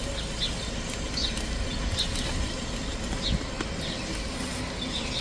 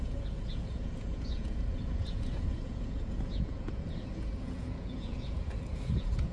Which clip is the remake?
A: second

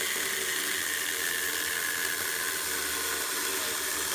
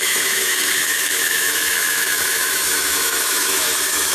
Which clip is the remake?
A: second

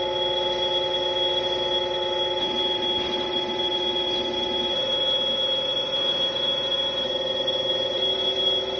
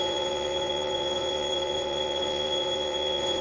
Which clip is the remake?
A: second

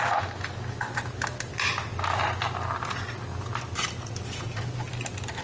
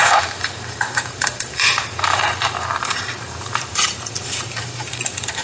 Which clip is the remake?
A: second